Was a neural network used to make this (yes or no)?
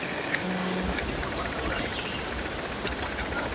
no